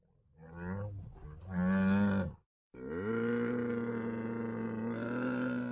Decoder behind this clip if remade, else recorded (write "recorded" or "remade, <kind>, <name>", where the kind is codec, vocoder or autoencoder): recorded